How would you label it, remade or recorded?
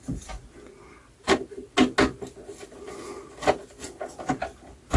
recorded